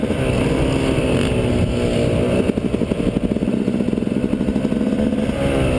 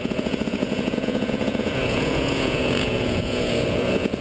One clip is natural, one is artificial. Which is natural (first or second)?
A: first